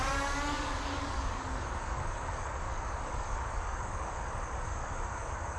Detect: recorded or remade remade